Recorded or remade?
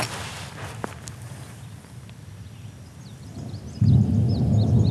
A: recorded